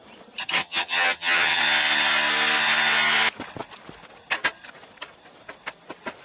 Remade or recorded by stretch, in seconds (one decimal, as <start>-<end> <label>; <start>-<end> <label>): 0.0-0.6 recorded; 0.6-1.6 remade; 1.6-6.2 recorded